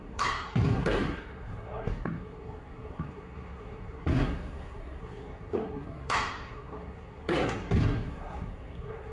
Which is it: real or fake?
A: fake